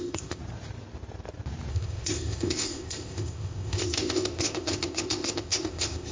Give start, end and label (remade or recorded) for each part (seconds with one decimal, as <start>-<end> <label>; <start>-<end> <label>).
0.0-0.4 remade; 0.4-1.7 recorded; 1.7-6.1 remade